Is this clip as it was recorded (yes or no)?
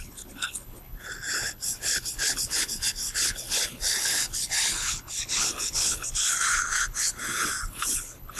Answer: no